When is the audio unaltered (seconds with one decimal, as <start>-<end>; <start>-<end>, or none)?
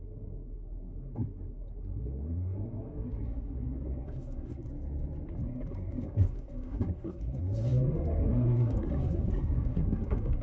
4.7-5.4